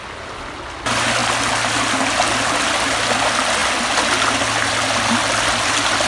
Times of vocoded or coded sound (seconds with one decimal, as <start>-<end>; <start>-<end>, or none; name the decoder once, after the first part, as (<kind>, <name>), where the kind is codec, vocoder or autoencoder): none